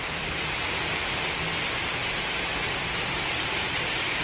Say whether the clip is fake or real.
fake